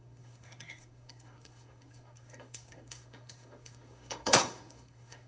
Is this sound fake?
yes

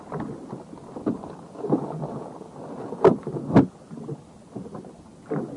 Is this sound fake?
no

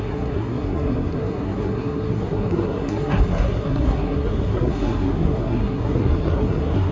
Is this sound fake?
yes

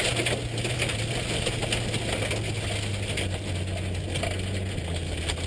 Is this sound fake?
no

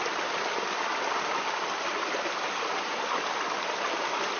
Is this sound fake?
no